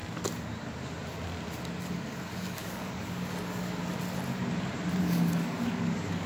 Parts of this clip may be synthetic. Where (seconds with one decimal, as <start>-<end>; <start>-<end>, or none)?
1.8-3.8; 5.0-6.3

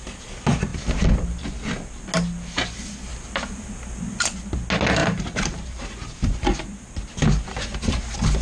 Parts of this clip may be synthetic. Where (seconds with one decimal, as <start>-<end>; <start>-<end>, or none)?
5.0-6.4

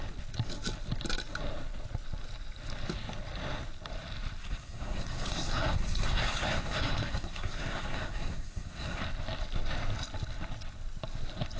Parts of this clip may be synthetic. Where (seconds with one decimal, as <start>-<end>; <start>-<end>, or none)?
4.4-9.0

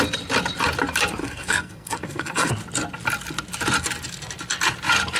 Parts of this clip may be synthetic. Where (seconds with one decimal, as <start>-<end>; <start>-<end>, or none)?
1.2-2.5

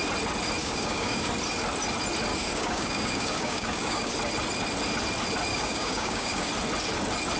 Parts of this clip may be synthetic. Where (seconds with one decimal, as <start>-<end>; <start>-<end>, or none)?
0.6-1.3; 2.3-4.1; 5.5-6.5

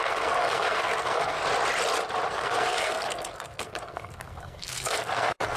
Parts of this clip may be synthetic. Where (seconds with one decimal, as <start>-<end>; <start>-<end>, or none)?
0.0-1.4; 2.3-5.6

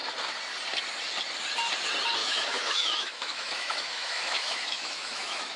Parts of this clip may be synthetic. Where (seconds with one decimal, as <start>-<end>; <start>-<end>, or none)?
2.2-5.6